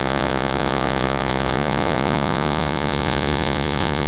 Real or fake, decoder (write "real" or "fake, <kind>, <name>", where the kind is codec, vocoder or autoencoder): fake, vocoder, Vocos